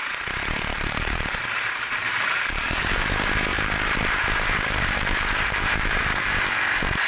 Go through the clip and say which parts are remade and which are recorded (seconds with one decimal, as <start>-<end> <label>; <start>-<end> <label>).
0.0-0.7 recorded; 0.7-3.0 remade; 3.0-3.5 recorded; 3.5-6.4 remade; 6.4-7.1 recorded

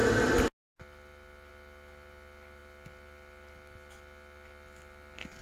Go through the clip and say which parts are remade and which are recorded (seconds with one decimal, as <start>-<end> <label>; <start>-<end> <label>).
0.0-5.4 recorded

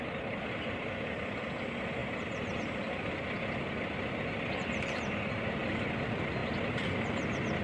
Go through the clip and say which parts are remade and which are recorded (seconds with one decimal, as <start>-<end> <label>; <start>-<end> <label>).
0.0-7.6 recorded

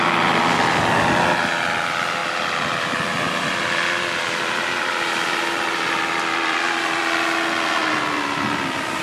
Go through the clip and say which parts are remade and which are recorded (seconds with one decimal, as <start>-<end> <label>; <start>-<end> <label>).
0.0-2.2 recorded; 2.2-7.0 remade; 7.0-7.8 recorded; 7.8-9.0 remade

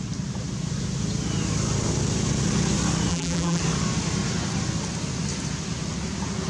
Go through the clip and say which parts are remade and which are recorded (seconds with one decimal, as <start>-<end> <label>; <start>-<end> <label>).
0.0-3.1 recorded; 3.1-3.6 remade; 3.6-6.5 recorded

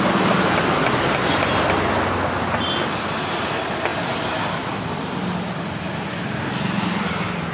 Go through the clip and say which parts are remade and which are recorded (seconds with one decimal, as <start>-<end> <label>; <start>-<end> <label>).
0.0-7.5 recorded